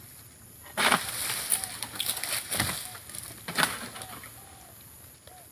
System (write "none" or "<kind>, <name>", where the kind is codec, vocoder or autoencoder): none